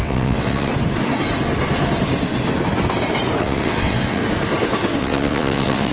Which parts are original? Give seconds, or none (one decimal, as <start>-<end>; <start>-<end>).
0.7-3.4; 4.2-5.0